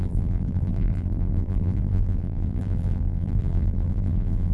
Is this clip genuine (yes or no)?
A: no